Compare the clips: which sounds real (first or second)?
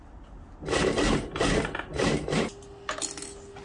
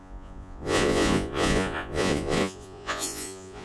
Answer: first